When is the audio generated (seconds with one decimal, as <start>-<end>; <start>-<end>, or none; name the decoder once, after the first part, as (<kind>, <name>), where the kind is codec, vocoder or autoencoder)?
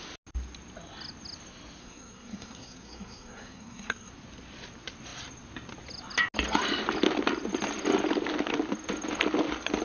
1.8-4.1 (codec, SNAC)